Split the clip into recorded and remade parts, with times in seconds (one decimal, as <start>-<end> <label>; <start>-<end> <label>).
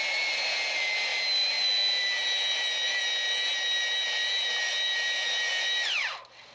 0.0-6.5 recorded